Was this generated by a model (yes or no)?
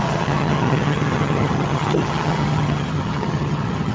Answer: yes